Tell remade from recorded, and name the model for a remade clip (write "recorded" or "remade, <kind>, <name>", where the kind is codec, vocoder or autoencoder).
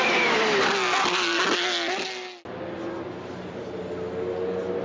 recorded